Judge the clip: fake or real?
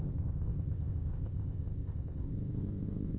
fake